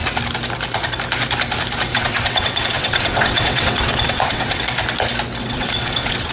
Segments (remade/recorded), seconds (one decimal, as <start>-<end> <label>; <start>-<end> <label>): 0.0-1.9 recorded; 1.9-4.6 remade; 4.6-5.4 recorded; 5.4-6.3 remade